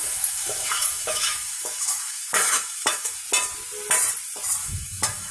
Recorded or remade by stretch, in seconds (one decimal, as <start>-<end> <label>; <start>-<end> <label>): 0.0-3.2 remade; 3.2-4.6 recorded; 4.6-5.3 remade